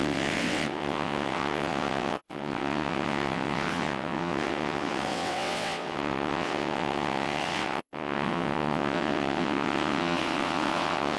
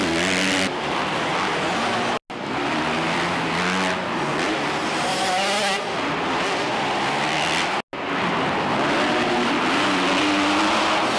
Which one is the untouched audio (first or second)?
second